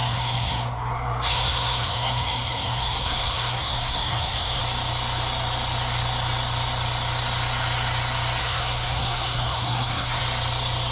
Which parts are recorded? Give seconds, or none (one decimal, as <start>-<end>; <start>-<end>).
4.6-8.4; 10.2-10.9